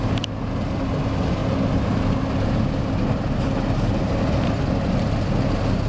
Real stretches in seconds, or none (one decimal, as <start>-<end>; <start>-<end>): 0.0-5.9